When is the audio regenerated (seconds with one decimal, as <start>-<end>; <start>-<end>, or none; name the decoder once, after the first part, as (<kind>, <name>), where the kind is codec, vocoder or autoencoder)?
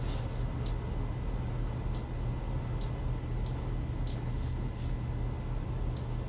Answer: 4.1-4.7 (codec, HILCodec)